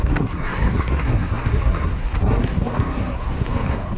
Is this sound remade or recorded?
remade